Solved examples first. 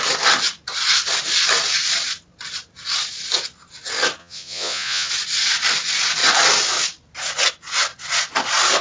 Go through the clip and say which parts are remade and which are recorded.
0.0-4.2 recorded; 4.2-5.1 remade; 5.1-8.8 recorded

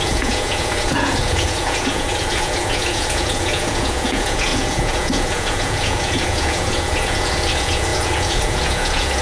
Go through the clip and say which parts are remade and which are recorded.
0.0-9.2 remade

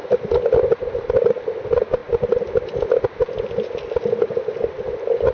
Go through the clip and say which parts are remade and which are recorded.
0.0-5.3 recorded

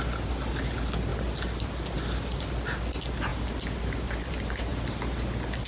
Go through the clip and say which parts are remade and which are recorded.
0.0-5.7 recorded